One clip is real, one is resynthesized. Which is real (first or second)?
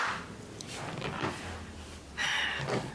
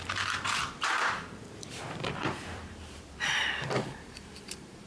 first